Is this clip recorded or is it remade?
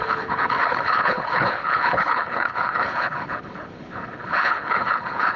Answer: remade